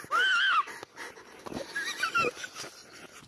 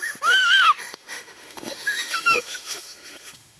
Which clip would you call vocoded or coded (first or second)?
second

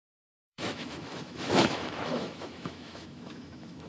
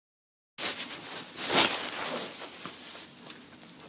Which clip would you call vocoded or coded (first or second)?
first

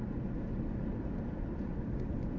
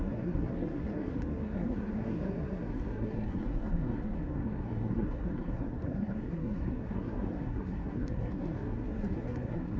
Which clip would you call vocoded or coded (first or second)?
second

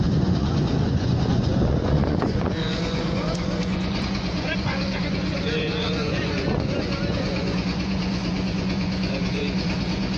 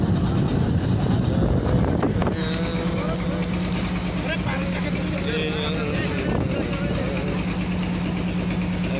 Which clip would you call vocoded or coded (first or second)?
first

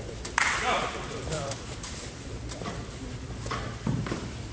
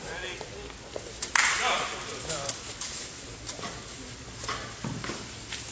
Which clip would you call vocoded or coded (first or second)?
first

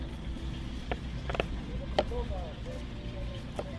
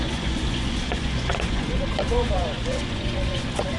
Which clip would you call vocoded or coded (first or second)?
second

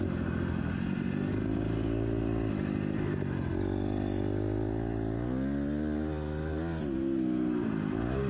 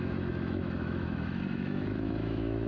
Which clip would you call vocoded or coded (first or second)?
second